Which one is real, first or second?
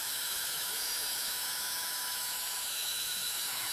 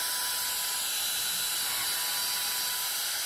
second